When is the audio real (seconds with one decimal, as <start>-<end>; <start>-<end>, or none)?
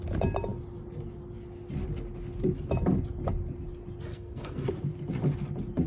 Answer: 0.0-4.1; 4.7-5.9